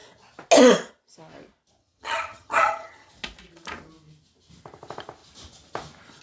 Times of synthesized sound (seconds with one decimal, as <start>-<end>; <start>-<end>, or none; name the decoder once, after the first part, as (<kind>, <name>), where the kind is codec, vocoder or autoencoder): 1.8-3.1 (vocoder, HiFi-GAN)